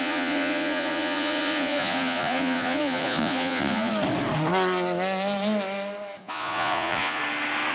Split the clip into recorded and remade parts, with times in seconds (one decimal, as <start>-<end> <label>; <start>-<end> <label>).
0.0-3.9 remade; 3.9-6.2 recorded; 6.2-7.2 remade; 7.2-7.7 recorded